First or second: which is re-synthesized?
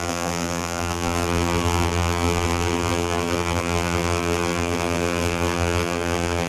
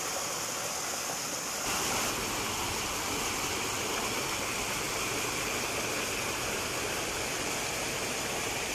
first